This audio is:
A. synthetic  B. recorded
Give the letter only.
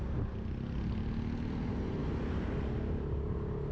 B